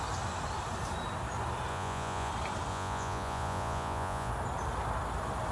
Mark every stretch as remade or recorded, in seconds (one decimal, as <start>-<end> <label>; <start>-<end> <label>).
0.0-1.7 recorded; 1.7-2.3 remade; 2.3-2.7 recorded; 2.7-4.3 remade; 4.3-5.5 recorded